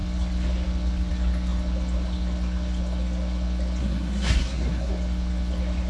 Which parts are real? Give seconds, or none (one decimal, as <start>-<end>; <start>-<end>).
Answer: 0.0-3.8; 4.9-5.9